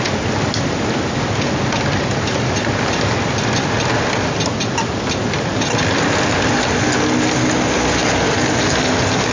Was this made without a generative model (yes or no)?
yes